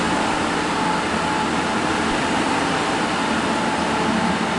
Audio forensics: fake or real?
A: real